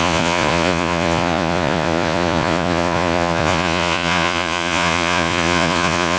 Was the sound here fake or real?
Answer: fake